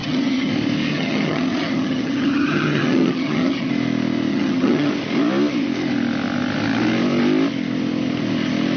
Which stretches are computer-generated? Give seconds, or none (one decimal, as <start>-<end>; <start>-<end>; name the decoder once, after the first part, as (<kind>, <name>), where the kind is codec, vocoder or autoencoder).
0.0-0.5 (vocoder, HiFi-GAN); 0.9-3.7; 4.3-4.9